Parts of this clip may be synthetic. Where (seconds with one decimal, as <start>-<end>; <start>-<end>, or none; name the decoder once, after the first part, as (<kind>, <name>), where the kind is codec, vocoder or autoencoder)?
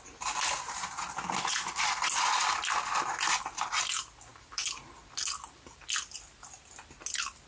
4.3-4.8 (vocoder, BigVGAN v2)